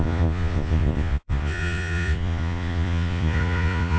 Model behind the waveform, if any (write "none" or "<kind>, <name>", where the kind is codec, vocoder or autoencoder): vocoder, Vocos